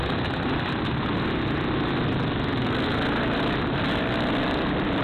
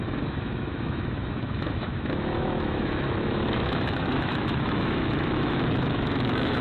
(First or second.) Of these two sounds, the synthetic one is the second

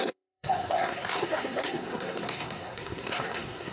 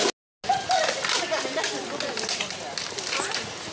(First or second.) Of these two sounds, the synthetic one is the first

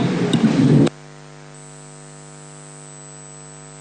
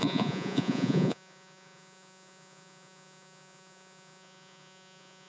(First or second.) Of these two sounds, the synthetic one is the second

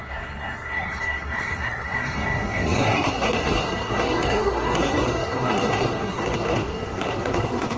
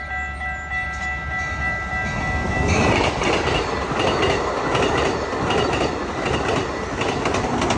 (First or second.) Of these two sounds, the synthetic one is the first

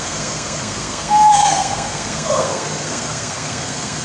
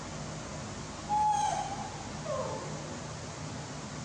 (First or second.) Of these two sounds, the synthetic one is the first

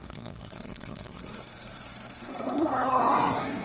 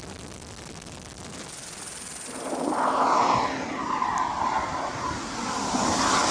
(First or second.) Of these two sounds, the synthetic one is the first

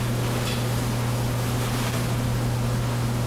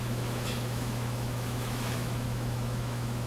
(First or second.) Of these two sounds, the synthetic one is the second